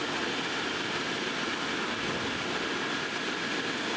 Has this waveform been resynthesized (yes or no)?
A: no